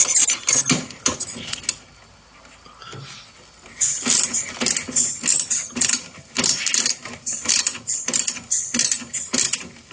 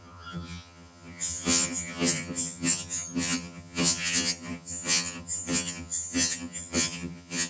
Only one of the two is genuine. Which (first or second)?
first